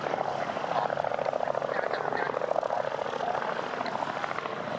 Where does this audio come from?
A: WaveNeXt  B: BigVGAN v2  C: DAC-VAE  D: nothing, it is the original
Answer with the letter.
D